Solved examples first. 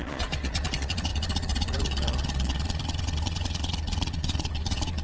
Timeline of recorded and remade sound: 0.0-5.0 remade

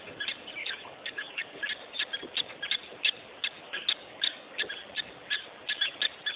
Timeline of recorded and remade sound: 0.0-0.6 recorded; 0.6-1.6 remade; 1.6-3.6 recorded; 3.6-4.6 remade; 4.6-6.4 recorded

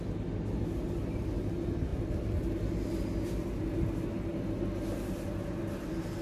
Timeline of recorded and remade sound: 0.0-6.2 recorded